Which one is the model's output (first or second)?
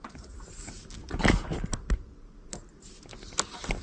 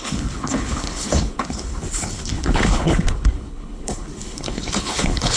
second